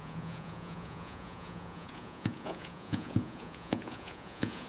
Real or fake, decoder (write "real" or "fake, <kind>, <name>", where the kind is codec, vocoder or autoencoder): fake, vocoder, Vocos